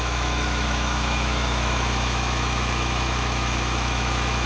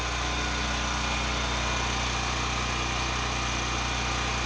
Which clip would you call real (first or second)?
second